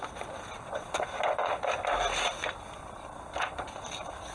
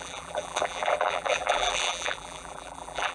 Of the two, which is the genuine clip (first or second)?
first